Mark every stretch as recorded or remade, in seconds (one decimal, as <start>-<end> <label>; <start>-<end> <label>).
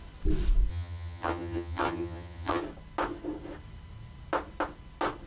0.0-0.7 recorded; 0.7-2.6 remade; 2.6-5.3 recorded